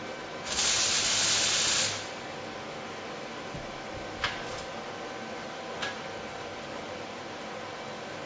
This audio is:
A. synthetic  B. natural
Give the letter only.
B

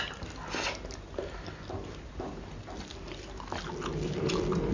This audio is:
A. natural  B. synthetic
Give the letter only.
A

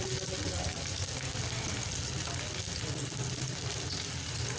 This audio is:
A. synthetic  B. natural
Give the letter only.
B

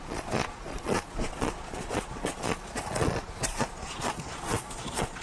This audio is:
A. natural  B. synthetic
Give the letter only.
B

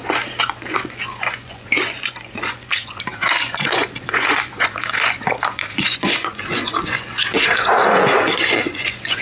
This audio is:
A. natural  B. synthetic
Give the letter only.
B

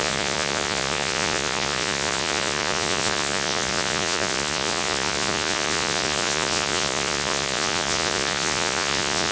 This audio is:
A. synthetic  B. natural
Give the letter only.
A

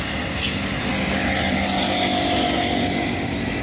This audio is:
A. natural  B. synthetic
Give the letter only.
A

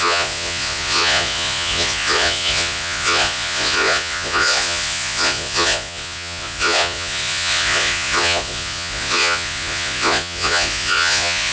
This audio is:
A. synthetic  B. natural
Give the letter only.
A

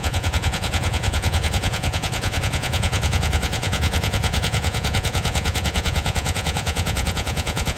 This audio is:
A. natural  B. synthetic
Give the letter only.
B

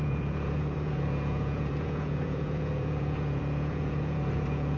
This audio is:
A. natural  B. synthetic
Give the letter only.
B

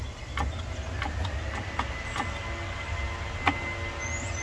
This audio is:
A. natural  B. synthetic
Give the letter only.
A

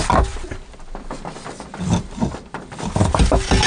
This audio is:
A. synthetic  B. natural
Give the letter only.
B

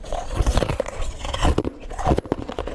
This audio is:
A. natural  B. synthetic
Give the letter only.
B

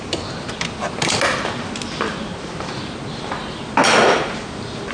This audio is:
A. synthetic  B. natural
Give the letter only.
B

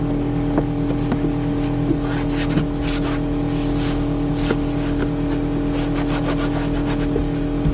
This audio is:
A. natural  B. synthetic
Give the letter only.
A